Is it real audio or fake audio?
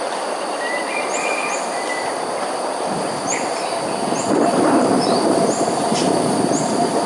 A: fake